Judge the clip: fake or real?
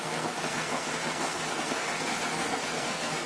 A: fake